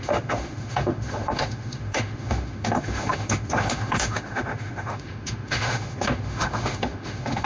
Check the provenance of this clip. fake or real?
fake